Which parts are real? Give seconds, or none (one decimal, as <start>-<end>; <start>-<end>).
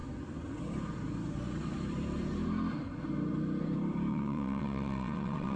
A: 0.0-4.1